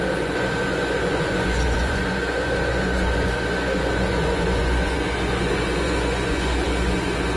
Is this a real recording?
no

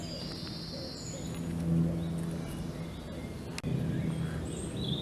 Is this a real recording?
yes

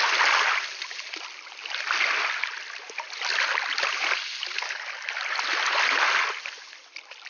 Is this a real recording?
yes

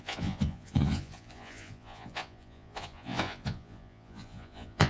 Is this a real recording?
no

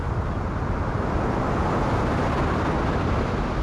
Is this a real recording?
yes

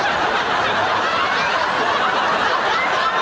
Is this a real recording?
yes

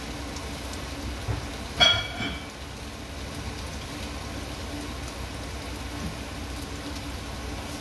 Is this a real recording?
yes